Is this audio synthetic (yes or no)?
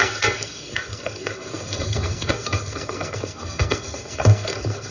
yes